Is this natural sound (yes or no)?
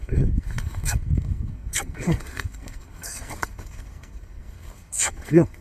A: no